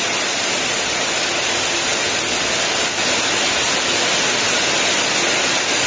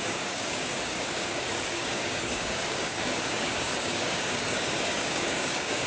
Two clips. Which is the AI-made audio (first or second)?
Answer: second